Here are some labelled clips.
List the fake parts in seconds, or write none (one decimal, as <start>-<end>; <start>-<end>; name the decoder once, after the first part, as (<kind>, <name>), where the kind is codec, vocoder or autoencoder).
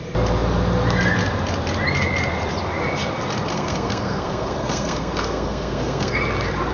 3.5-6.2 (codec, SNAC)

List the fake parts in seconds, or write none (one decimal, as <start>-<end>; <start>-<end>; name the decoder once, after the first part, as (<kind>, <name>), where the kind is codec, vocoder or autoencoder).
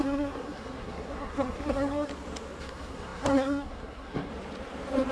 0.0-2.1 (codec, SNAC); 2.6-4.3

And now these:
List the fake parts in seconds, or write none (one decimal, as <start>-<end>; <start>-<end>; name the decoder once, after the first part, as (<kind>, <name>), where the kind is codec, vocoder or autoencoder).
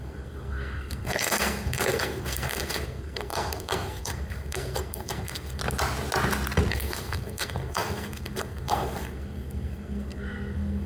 0.0-5.6 (codec, SNAC); 6.7-10.9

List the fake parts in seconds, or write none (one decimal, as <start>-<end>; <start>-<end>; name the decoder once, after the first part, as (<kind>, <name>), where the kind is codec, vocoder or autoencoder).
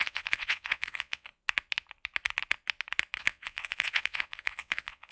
0.0-1.3 (vocoder, WaveNeXt); 3.2-5.1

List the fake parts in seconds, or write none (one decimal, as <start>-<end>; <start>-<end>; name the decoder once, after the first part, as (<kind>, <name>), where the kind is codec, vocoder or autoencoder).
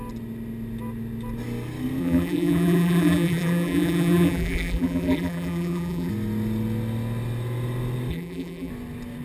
2.0-6.1 (vocoder, BigVGAN v2); 8.1-8.7